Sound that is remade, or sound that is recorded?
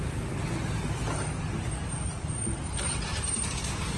recorded